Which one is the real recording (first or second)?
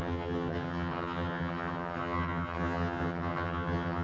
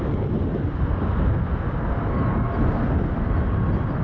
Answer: second